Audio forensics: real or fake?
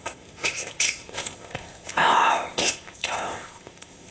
fake